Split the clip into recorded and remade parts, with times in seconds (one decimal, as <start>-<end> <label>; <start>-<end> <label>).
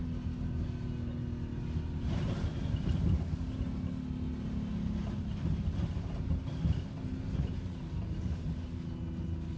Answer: 0.0-9.6 recorded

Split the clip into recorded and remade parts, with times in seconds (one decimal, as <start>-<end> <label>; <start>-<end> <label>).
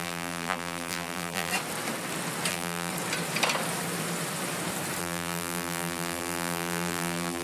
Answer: 0.0-1.5 remade; 1.5-2.5 recorded; 2.5-2.9 remade; 2.9-5.0 recorded; 5.0-7.4 remade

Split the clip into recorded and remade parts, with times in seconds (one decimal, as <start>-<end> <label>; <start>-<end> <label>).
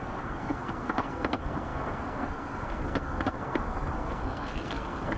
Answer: 0.0-5.2 remade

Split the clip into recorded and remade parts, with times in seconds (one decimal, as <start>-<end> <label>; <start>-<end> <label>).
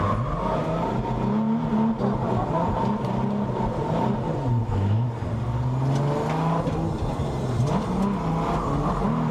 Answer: 0.0-4.6 recorded; 4.6-5.1 remade; 5.1-9.3 recorded